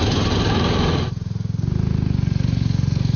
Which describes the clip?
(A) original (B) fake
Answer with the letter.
A